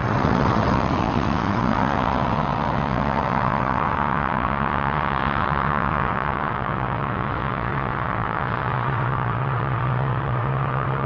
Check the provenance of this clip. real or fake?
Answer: fake